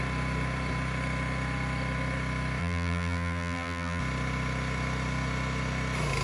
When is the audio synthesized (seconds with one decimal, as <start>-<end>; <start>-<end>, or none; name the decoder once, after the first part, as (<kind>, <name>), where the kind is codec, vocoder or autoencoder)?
2.6-4.0 (vocoder, BigVGAN v2)